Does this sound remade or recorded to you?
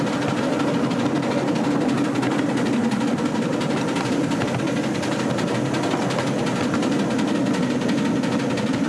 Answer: recorded